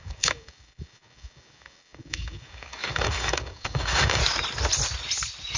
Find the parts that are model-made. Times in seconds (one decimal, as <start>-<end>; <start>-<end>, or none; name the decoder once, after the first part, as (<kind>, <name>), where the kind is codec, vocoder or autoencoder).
0.0-4.2 (codec, DAC)